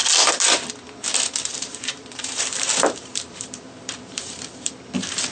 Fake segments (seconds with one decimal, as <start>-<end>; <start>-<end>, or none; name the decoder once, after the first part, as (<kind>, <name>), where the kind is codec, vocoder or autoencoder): 1.5-4.7 (vocoder, BigVGAN v2)